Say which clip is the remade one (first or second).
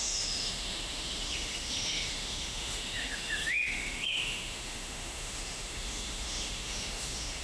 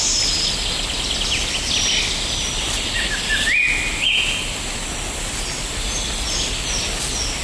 first